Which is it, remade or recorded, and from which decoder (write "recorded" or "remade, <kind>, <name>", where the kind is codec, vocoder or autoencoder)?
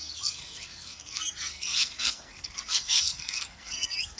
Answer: remade, codec, SNAC